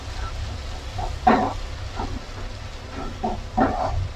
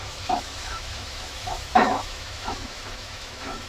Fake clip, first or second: second